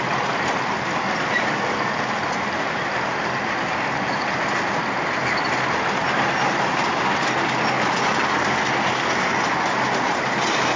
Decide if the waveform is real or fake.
real